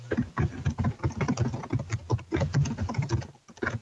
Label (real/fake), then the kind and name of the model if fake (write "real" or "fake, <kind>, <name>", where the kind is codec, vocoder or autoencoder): real